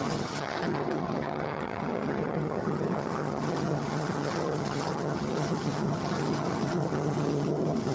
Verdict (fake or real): fake